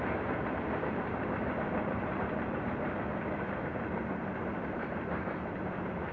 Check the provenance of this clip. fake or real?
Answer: fake